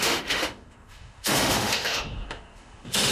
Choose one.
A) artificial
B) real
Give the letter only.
A